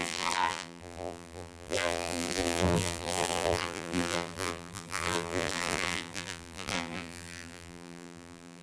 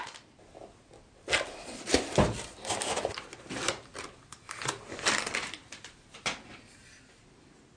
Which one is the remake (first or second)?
first